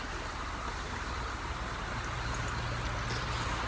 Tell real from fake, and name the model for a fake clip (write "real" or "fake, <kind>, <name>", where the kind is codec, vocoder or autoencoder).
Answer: real